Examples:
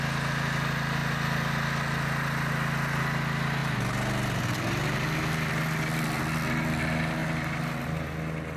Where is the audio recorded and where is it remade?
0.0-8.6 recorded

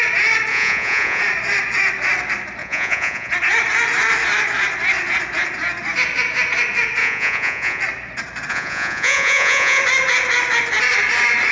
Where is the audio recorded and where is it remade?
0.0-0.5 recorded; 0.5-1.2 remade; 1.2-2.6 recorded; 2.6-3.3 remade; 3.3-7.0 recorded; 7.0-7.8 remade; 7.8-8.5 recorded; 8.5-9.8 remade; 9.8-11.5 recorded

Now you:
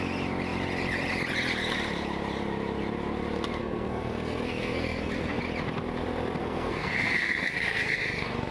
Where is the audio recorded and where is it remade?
0.0-3.6 recorded; 3.6-5.4 remade; 5.4-6.4 recorded; 6.4-8.5 remade

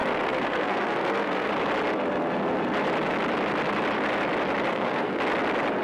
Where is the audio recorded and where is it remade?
0.0-1.5 remade; 1.5-4.7 recorded; 4.7-5.2 remade; 5.2-5.8 recorded